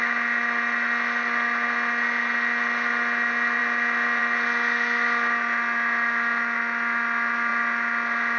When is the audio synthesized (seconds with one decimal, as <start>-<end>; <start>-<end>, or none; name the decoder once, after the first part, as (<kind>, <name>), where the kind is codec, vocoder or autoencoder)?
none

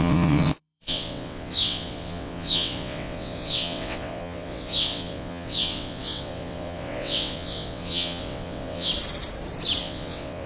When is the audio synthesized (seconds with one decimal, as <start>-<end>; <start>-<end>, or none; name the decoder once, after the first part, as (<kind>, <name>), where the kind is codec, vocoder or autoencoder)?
0.0-8.9 (vocoder, WaveNeXt); 9.8-10.5

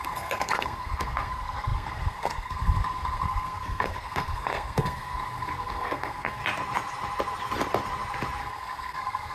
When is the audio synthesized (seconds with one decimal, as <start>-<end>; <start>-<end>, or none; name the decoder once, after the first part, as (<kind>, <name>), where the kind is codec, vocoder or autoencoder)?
0.0-6.4 (codec, SNAC); 8.4-9.3